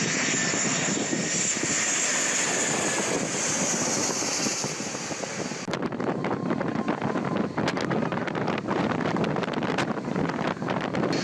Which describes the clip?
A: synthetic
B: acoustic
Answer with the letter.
B